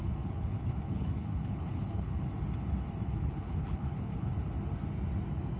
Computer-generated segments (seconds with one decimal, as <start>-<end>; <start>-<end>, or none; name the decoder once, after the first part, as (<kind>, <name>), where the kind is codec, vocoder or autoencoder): 0.0-2.2 (codec, HILCodec); 3.2-4.3